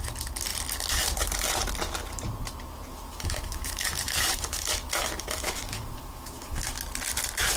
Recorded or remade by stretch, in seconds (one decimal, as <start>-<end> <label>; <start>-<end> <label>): 0.0-2.9 recorded; 2.9-6.8 remade; 6.8-7.6 recorded

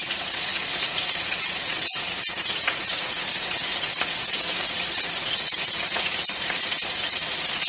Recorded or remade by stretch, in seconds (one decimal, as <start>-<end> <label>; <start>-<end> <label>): 0.0-7.7 remade

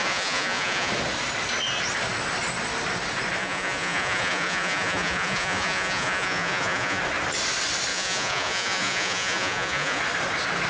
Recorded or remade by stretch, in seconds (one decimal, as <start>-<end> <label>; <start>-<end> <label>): 0.0-0.9 remade; 0.9-3.4 recorded; 3.4-7.0 remade; 7.0-7.9 recorded; 7.9-10.0 remade; 10.0-10.7 recorded

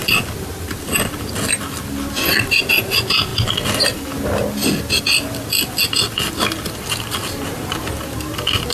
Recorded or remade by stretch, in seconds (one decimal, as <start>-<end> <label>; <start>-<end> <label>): 0.0-8.7 recorded